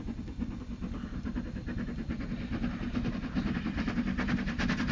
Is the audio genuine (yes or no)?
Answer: yes